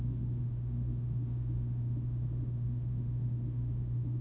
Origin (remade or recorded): remade